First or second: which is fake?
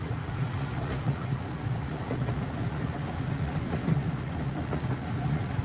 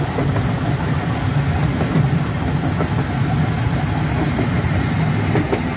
first